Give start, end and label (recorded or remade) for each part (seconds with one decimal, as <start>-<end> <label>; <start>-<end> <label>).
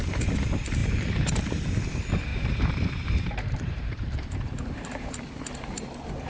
0.0-0.8 recorded; 0.8-1.4 remade; 1.4-2.3 recorded; 2.3-6.3 remade